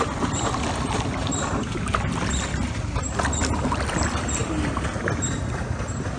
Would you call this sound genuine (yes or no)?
yes